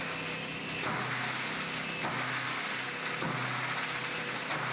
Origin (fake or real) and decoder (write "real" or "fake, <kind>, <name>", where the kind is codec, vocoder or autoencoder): real